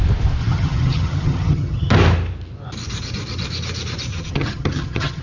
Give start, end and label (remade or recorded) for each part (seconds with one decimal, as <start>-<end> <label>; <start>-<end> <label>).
0.0-0.4 recorded; 0.4-1.9 remade; 1.9-4.1 recorded; 4.1-5.2 remade